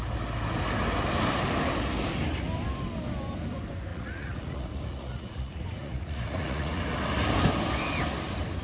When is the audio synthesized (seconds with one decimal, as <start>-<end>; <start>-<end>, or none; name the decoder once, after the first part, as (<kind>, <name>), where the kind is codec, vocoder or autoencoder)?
3.9-6.8 (vocoder, Vocos)